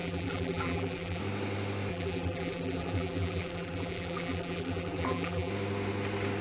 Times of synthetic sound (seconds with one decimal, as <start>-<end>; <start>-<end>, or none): 0.0-1.2; 1.9-5.5